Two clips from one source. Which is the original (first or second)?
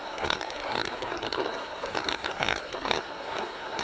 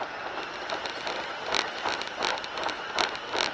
second